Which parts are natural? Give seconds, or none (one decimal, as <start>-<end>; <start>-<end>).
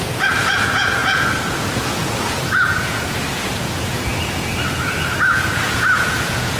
4.1-5.2